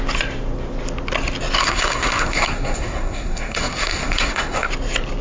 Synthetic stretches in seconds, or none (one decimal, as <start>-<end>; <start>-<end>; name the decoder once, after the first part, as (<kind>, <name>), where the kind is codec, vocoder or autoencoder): 1.6-4.7 (codec, SNAC)